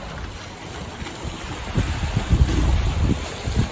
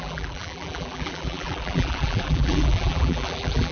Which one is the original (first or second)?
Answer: first